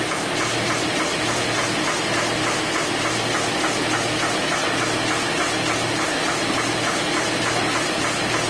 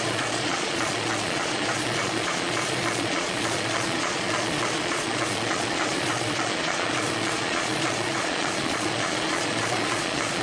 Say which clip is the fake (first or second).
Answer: second